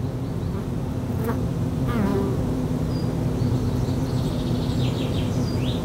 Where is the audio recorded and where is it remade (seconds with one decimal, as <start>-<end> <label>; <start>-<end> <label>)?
0.0-5.8 recorded